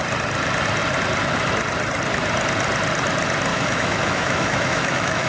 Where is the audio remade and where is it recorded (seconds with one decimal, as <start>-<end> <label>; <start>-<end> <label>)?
0.0-3.5 recorded; 3.5-5.3 remade